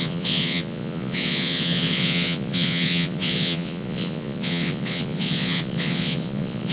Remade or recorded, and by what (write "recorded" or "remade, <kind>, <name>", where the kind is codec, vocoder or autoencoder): remade, vocoder, Vocos